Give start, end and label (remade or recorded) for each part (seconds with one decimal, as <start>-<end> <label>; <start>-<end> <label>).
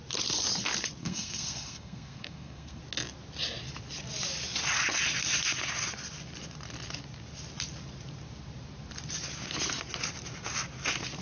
0.0-1.0 recorded; 1.0-2.8 remade; 2.8-11.2 recorded